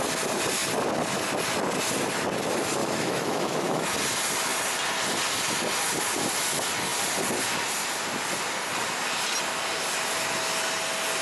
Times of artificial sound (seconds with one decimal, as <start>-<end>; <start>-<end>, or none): 2.8-3.9